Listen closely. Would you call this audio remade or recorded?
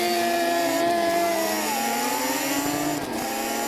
remade